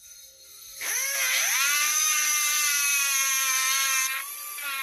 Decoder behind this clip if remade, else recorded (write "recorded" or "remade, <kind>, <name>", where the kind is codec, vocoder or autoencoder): recorded